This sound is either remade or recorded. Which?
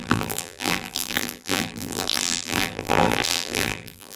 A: remade